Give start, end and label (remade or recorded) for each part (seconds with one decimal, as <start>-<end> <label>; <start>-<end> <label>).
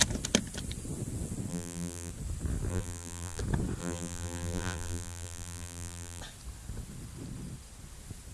0.0-1.5 recorded; 1.5-2.1 remade; 2.1-2.7 recorded; 2.7-3.4 remade; 3.4-3.8 recorded; 3.8-6.2 remade; 6.2-8.3 recorded